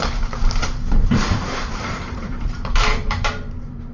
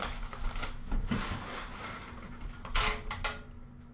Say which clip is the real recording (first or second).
second